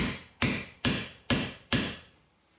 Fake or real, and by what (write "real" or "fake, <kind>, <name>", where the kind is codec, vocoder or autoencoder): fake, vocoder, BigVGAN v2